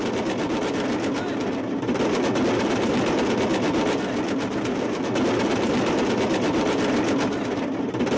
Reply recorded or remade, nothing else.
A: recorded